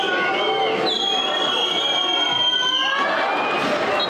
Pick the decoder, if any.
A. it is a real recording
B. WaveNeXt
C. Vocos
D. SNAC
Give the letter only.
A